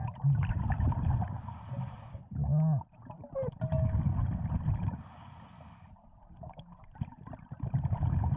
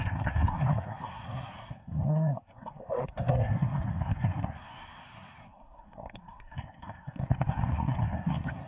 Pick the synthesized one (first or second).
second